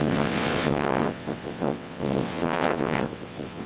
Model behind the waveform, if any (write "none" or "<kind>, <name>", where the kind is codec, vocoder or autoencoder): vocoder, WaveNeXt